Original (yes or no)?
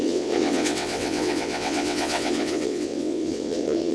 no